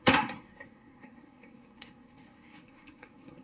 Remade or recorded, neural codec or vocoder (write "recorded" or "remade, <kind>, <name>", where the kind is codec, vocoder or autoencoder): remade, codec, SNAC